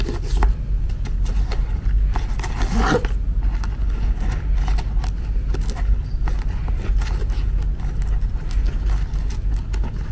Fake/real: real